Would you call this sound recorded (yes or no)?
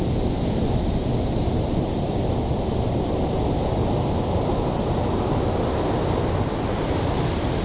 yes